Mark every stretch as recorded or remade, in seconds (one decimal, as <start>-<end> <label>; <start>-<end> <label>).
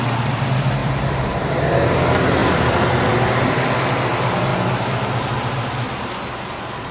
0.0-0.8 recorded; 0.8-1.4 remade; 1.4-2.4 recorded; 2.4-3.5 remade; 3.5-6.9 recorded